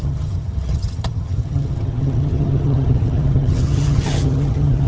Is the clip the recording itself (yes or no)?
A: no